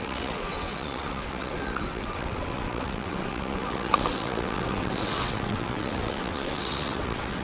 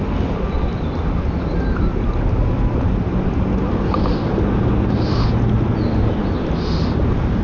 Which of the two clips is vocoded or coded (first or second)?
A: first